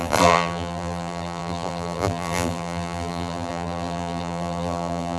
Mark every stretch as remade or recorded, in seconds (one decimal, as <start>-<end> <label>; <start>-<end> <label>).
0.0-5.2 remade